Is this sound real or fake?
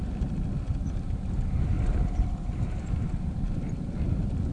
real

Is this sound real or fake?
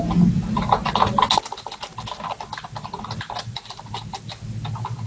real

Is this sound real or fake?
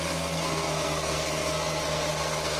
fake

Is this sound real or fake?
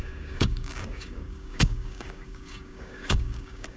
fake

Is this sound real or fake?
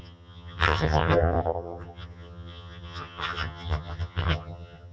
fake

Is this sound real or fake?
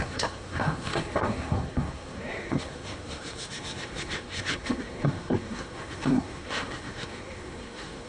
fake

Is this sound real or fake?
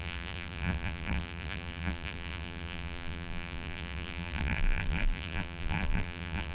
fake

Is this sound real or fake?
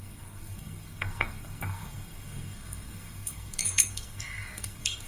fake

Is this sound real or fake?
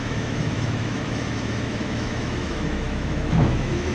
fake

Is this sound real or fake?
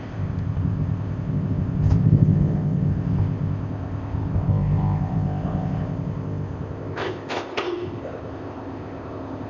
fake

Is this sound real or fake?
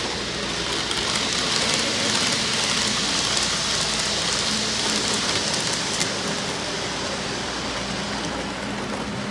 real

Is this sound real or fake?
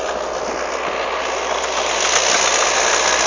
real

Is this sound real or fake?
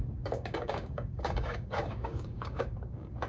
fake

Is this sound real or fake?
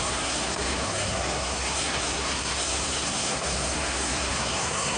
fake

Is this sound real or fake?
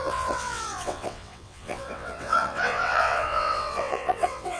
fake